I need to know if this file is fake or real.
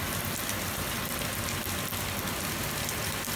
real